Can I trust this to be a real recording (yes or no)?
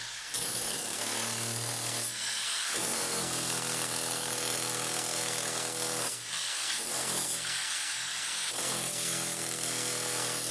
no